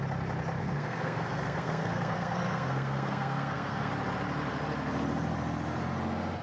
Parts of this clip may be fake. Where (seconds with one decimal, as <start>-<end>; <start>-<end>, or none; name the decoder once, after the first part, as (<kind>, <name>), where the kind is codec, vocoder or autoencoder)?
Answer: 0.6-3.9 (codec, SNAC)